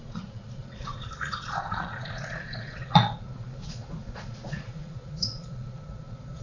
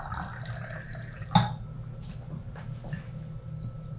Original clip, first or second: second